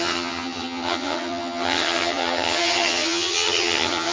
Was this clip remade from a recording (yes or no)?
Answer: yes